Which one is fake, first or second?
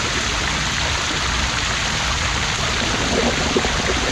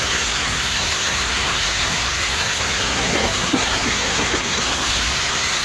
second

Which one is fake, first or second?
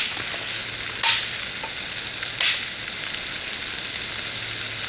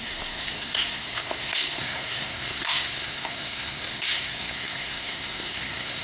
second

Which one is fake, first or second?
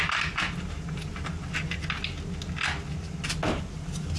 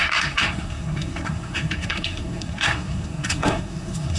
second